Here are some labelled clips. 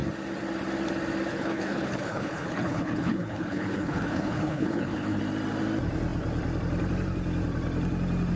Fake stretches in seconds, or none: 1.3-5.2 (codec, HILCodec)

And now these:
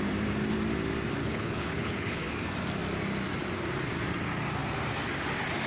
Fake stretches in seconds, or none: 1.2-2.3 (codec, HILCodec)

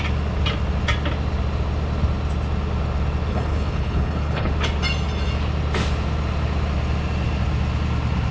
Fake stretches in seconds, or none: 3.3-4.5 (codec, HILCodec)